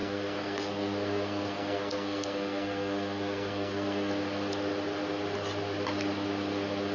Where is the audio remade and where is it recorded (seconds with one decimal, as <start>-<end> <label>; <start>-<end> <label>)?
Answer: 0.0-4.1 remade; 4.1-6.9 recorded